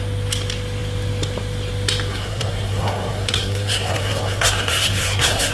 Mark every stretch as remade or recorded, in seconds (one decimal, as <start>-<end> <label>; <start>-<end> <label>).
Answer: 0.0-2.1 recorded; 2.1-5.5 remade